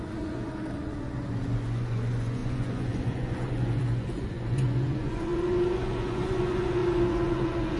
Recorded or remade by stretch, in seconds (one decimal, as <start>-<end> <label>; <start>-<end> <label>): 0.0-7.8 remade